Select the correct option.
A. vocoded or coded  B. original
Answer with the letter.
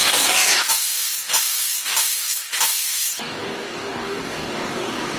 A